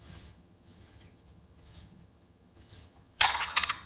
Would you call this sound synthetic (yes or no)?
yes